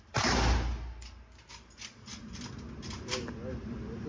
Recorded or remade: recorded